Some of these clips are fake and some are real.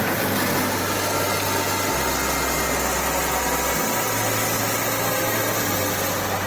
real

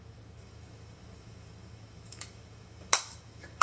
fake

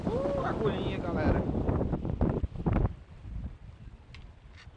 real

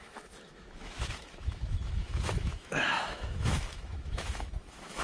fake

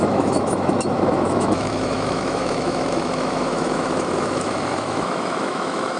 fake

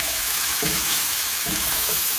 fake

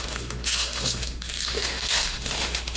fake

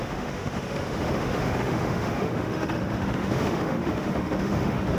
fake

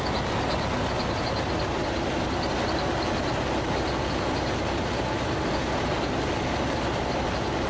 real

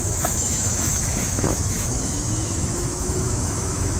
fake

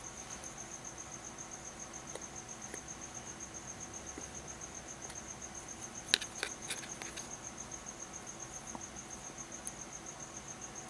real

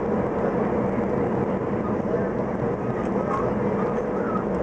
real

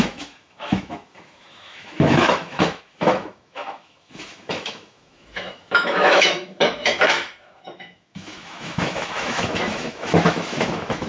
fake